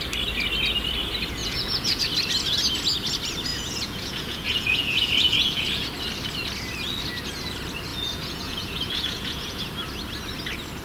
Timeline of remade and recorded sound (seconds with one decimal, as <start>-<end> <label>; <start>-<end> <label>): 0.0-1.4 recorded; 1.4-2.0 remade; 2.0-3.5 recorded; 3.5-5.9 remade; 5.9-7.9 recorded; 7.9-9.6 remade; 9.6-10.8 recorded